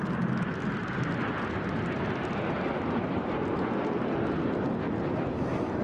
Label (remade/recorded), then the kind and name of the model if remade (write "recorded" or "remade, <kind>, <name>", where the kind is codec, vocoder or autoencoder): recorded